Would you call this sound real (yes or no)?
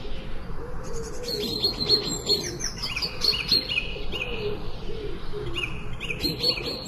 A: yes